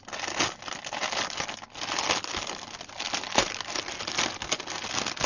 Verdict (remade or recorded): recorded